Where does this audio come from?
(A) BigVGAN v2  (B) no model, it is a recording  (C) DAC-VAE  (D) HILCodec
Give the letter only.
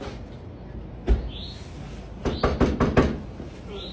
B